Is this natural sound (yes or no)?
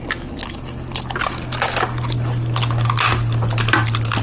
yes